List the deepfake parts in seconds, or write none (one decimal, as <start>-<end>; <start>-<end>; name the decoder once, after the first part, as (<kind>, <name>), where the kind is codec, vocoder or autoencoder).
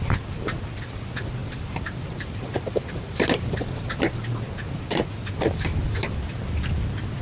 1.4-3.9 (vocoder, BigVGAN v2)